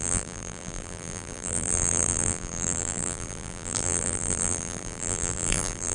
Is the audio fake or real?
fake